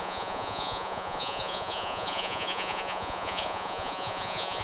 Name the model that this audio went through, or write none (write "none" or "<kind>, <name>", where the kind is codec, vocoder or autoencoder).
vocoder, Vocos